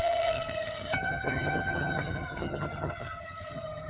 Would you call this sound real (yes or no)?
no